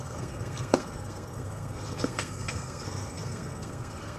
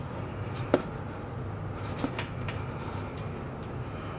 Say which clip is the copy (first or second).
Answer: first